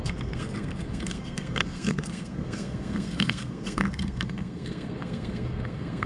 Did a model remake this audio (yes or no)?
yes